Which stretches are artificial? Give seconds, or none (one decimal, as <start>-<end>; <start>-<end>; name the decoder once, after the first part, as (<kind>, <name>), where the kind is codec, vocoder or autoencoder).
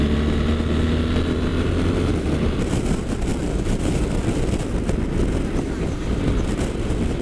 none